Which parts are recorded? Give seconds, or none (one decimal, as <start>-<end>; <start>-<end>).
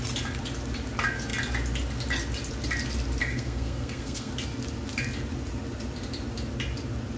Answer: 0.0-3.2; 4.3-7.2